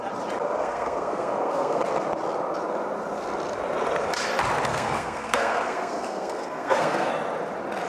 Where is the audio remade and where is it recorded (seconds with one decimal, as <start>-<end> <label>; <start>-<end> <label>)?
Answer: 0.0-0.6 recorded; 0.6-1.8 remade; 1.8-4.7 recorded; 4.7-7.1 remade; 7.1-7.9 recorded